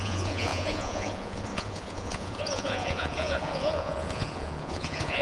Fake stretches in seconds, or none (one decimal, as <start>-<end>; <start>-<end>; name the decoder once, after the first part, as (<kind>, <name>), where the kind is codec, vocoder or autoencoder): 0.0-5.2 (vocoder, Vocos)